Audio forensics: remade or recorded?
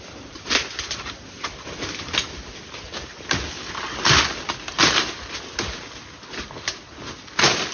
recorded